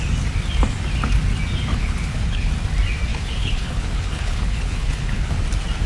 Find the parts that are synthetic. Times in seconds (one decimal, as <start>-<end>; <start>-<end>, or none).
1.7-2.5; 3.1-5.4